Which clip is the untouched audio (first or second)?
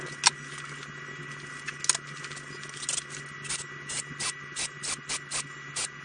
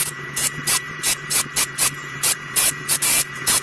first